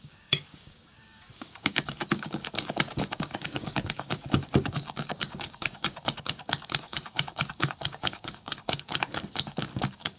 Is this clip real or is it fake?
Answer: fake